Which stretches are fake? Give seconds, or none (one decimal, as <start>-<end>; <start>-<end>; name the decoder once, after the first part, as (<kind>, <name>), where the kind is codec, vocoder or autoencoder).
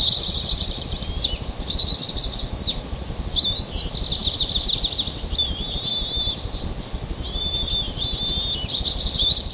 none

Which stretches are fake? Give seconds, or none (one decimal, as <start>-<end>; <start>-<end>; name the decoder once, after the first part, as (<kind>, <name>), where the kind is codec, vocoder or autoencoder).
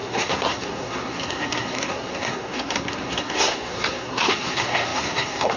0.0-5.6 (codec, SNAC)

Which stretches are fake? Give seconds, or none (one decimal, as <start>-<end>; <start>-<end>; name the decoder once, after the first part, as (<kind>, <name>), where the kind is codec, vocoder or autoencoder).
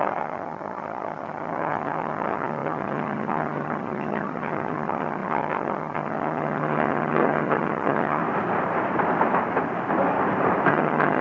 0.0-8.2 (vocoder, HiFi-GAN); 10.7-11.2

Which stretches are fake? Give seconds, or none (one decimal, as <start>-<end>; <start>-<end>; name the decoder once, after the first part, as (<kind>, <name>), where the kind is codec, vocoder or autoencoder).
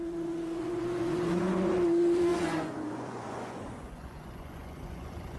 0.0-5.4 (vocoder, Vocos)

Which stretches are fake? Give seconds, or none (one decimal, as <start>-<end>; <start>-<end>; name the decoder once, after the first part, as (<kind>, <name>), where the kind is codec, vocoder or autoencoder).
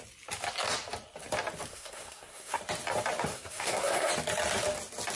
1.7-2.6 (codec, SNAC); 3.3-4.1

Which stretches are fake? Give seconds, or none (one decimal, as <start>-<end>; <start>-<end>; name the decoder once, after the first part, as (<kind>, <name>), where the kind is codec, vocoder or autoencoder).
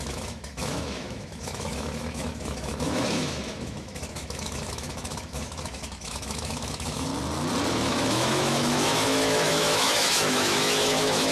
0.0-7.1 (autoencoder, DAC-VAE); 7.7-11.3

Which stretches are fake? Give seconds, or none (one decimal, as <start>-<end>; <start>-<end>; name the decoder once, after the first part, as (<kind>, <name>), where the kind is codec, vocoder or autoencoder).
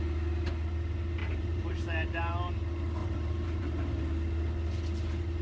1.2-2.5 (vocoder, BigVGAN v2); 3.0-4.0